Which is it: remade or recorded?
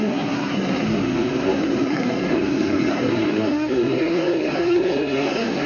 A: remade